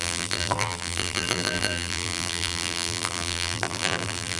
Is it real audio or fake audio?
fake